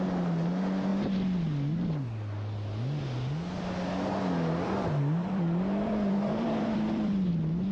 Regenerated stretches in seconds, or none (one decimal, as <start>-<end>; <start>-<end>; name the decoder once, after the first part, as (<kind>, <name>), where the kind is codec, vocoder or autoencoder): 5.2-7.3 (vocoder, BigVGAN v2)